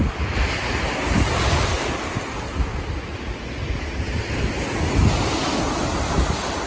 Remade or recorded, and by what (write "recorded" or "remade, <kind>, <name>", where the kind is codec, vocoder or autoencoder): recorded